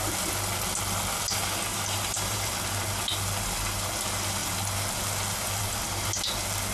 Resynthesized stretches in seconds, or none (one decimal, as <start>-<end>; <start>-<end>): 1.7-2.5